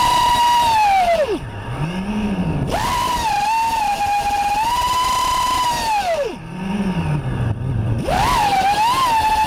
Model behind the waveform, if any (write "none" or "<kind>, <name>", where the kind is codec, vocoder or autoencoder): none